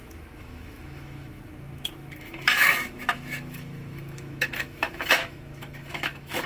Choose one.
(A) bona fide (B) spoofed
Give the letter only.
B